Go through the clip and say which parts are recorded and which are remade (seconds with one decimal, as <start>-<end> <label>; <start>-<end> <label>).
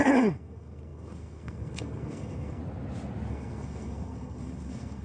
0.0-2.6 remade; 2.6-3.3 recorded; 3.3-5.0 remade